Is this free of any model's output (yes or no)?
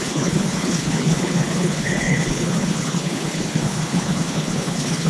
no